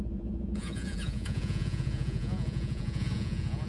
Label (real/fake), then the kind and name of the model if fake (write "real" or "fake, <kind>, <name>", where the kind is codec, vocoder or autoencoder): fake, vocoder, Vocos